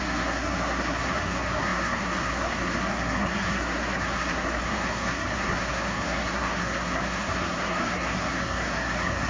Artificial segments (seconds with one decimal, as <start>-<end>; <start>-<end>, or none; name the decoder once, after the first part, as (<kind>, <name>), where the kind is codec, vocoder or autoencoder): 0.0-9.3 (codec, SNAC)